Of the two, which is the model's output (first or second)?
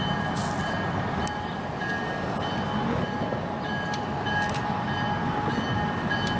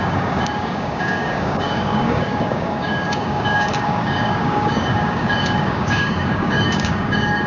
second